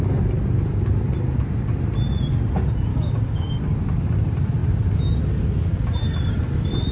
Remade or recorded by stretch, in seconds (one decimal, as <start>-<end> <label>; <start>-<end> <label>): 0.0-2.9 recorded; 2.9-3.6 remade; 3.6-6.9 recorded